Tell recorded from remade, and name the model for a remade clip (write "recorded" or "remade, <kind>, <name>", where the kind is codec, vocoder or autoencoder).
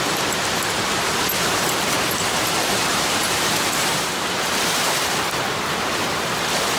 remade, vocoder, BigVGAN v2